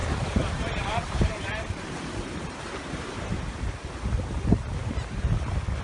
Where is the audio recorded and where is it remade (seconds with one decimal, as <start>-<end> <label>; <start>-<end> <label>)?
0.0-3.4 remade; 3.4-5.8 recorded